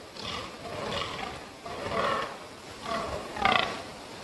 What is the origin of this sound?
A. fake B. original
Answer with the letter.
B